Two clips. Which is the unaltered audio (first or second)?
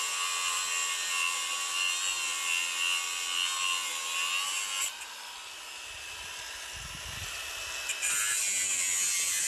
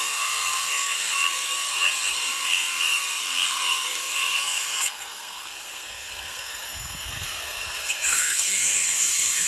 first